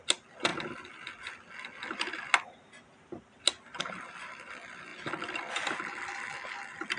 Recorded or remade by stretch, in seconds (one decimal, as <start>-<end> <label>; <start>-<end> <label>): 0.0-7.0 recorded

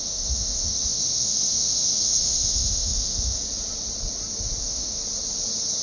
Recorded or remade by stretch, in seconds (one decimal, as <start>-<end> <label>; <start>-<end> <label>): 0.0-3.4 remade; 3.4-4.6 recorded; 4.6-5.0 remade; 5.0-5.8 recorded